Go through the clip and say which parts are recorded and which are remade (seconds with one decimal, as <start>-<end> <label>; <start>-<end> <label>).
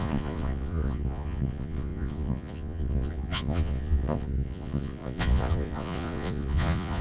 0.0-7.0 remade